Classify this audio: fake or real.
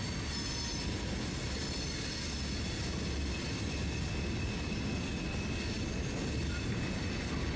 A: real